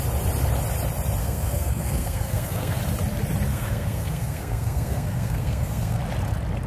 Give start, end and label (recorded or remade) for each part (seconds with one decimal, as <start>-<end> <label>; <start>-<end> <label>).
0.0-1.2 recorded; 1.2-2.8 remade; 2.8-3.5 recorded; 3.5-6.0 remade; 6.0-6.7 recorded